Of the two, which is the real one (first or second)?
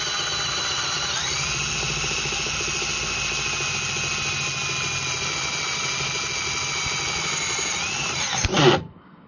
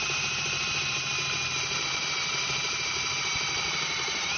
first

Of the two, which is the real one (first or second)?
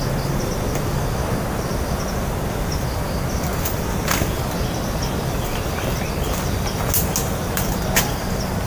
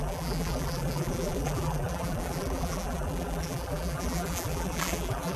first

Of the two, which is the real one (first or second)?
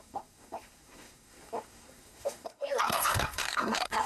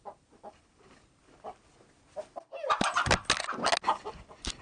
second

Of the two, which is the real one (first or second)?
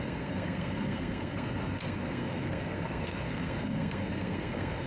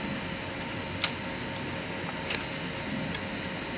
second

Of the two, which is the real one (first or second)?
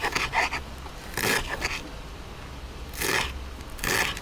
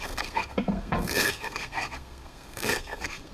first